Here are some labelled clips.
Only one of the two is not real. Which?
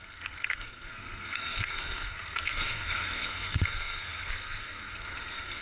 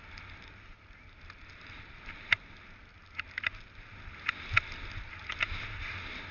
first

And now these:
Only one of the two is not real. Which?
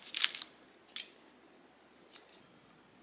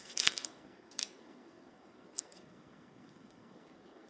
second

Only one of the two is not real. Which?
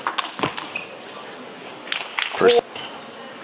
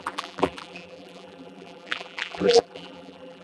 second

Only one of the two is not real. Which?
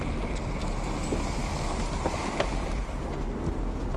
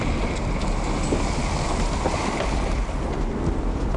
second